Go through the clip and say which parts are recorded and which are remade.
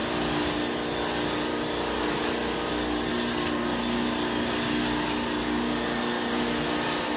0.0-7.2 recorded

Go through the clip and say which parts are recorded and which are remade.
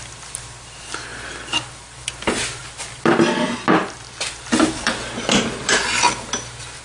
0.0-5.8 remade; 5.8-6.8 recorded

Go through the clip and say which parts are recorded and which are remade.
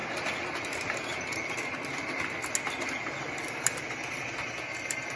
0.0-5.2 recorded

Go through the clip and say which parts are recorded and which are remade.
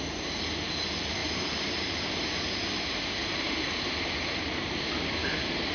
0.0-1.2 recorded; 1.2-2.1 remade; 2.1-5.7 recorded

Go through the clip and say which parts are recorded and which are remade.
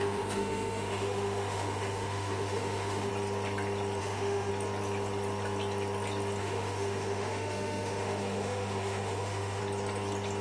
0.0-3.1 remade; 3.1-4.0 recorded; 4.0-4.5 remade; 4.5-6.4 recorded; 6.4-9.6 remade; 9.6-10.4 recorded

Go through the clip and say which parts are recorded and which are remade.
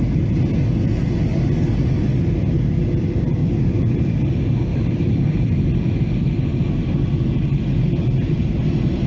0.0-3.4 recorded; 3.4-4.0 remade; 4.0-4.7 recorded; 4.7-5.7 remade; 5.7-6.5 recorded; 6.5-8.6 remade; 8.6-9.1 recorded